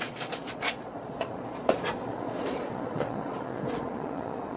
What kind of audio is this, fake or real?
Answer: fake